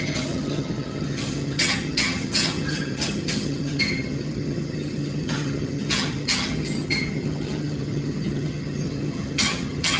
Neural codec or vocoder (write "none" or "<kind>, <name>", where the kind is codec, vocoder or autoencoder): vocoder, HiFi-GAN